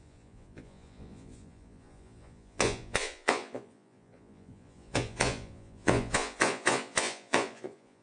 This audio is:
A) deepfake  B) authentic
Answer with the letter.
A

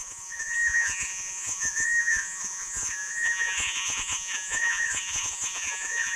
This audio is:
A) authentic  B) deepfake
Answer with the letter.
B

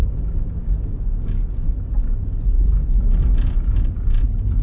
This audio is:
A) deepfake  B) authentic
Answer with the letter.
B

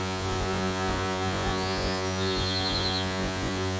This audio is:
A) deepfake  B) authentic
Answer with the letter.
A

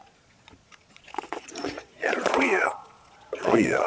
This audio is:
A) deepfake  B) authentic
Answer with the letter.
A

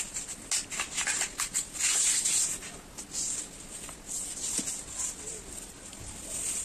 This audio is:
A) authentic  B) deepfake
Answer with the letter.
A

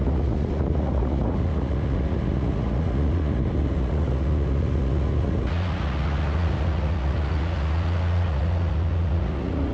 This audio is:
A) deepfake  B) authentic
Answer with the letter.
A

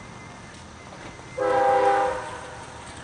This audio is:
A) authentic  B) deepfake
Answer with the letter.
A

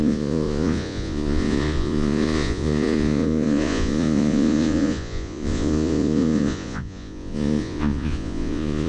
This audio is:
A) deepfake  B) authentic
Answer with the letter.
A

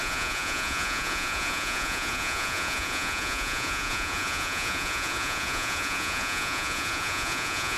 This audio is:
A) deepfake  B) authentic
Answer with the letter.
A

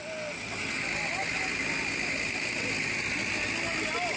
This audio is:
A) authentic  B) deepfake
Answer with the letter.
A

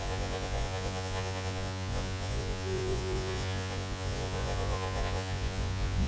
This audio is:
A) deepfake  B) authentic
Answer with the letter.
A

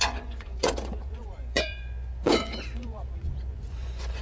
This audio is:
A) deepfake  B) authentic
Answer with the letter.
A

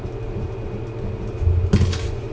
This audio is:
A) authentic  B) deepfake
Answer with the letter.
A